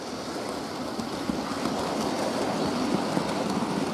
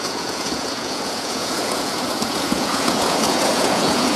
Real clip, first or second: first